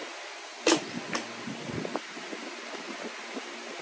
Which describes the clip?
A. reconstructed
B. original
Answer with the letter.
B